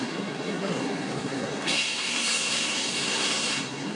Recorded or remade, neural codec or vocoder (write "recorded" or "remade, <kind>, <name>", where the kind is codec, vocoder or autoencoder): remade, codec, SNAC